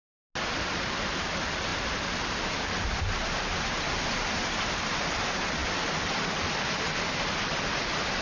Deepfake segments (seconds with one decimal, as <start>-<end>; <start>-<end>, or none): none